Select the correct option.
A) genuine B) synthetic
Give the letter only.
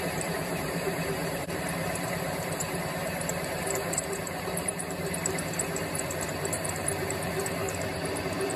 B